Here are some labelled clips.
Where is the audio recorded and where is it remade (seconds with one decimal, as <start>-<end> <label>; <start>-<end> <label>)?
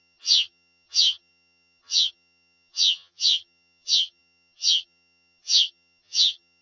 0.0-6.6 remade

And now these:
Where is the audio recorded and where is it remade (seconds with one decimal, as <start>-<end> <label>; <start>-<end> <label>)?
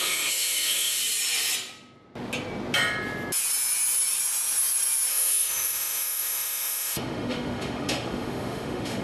0.0-1.0 remade; 1.0-5.1 recorded; 5.1-9.0 remade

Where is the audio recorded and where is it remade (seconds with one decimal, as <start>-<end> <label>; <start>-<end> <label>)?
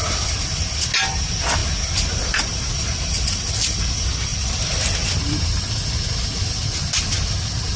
0.0-7.8 recorded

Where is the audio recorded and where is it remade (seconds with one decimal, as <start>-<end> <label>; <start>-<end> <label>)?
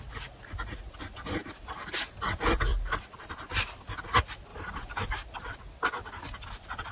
0.0-2.7 recorded; 2.7-3.7 remade; 3.7-4.5 recorded; 4.5-5.1 remade; 5.1-6.9 recorded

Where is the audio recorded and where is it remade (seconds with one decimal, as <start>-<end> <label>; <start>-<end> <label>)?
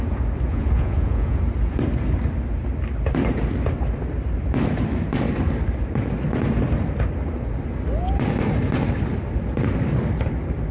0.0-0.5 recorded; 0.5-1.4 remade; 1.4-10.7 recorded